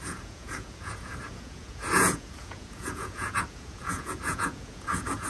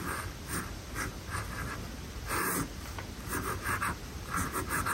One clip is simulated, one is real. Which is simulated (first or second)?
first